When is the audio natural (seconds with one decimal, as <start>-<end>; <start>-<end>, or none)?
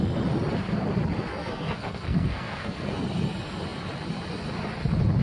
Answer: 0.0-1.3; 2.9-5.2